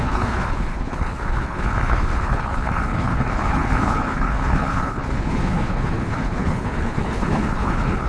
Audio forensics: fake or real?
fake